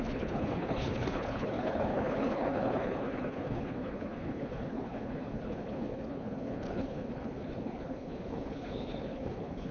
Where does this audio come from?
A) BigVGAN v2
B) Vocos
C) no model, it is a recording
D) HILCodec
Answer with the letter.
D